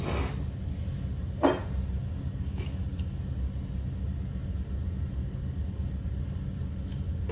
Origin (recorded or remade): recorded